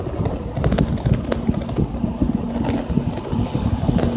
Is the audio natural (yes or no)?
yes